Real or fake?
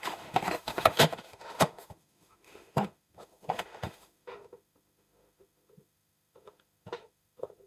fake